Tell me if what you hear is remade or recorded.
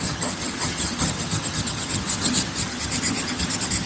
remade